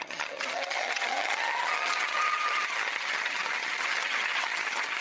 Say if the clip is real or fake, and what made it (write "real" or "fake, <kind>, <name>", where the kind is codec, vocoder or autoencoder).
fake, vocoder, HiFi-GAN